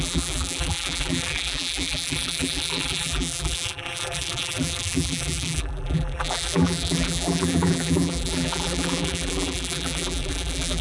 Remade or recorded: remade